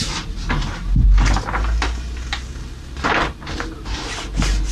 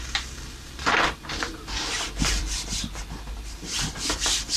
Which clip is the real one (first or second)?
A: first